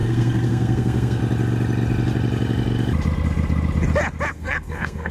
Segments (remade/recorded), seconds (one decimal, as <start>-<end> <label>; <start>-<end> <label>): 0.0-1.2 remade; 1.2-4.3 recorded; 4.3-5.1 remade